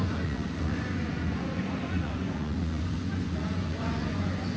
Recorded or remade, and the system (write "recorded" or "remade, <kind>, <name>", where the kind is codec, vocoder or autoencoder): remade, vocoder, Vocos